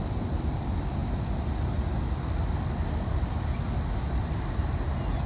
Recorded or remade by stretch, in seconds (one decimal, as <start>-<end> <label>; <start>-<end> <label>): 0.0-5.3 recorded

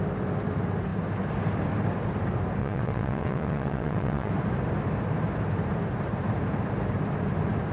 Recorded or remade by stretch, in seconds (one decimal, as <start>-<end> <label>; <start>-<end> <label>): 0.0-2.6 recorded; 2.6-4.3 remade; 4.3-7.7 recorded